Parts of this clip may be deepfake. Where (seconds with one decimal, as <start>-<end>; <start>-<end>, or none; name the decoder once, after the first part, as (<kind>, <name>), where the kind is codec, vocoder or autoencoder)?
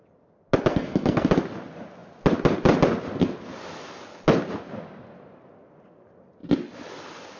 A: 0.7-1.3 (codec, SNAC)